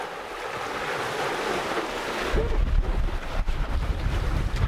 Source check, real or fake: real